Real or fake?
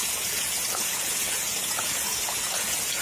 fake